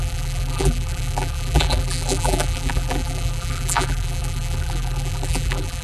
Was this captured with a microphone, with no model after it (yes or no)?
no